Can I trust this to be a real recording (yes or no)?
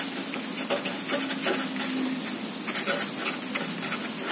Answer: yes